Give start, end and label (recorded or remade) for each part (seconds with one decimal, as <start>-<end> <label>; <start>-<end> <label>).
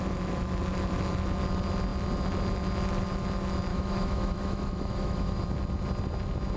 0.0-3.7 recorded; 3.7-5.4 remade; 5.4-6.6 recorded